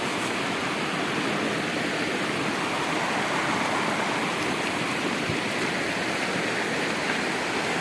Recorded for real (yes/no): yes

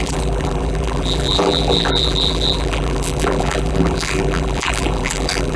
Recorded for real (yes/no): no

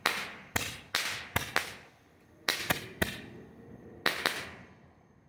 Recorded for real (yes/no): yes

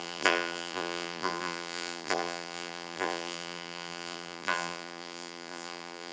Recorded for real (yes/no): no